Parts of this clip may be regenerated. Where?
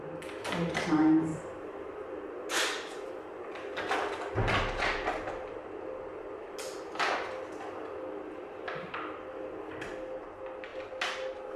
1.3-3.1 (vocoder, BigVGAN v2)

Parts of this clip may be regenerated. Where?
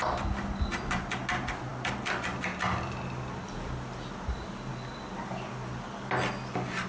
none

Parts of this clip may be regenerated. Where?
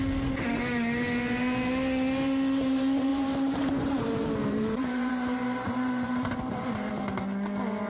3.1-6.9 (vocoder, BigVGAN v2)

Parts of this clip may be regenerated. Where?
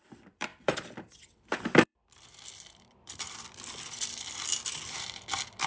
0.0-5.7 (vocoder, BigVGAN v2)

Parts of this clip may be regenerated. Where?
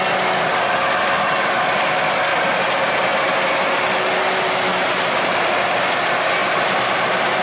2.3-3.1 (vocoder, BigVGAN v2); 4.7-5.3; 6.4-7.4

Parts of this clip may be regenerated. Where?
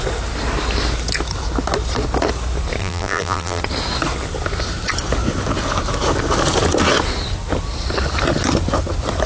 2.8-3.6 (vocoder, BigVGAN v2)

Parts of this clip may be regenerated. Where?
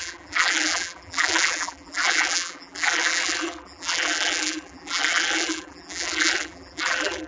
0.0-7.3 (vocoder, BigVGAN v2)